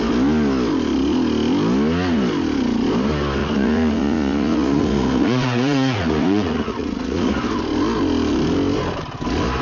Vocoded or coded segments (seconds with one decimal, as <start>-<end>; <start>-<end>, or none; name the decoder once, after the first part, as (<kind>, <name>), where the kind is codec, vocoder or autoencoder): 3.4-7.3 (vocoder, Vocos)